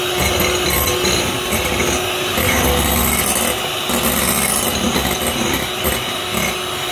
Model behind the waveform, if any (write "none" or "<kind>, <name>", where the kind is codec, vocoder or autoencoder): none